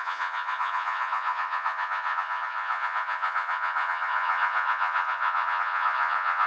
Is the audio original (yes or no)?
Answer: no